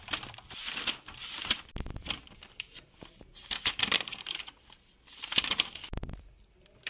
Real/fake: fake